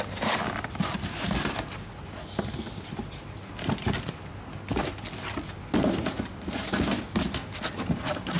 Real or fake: real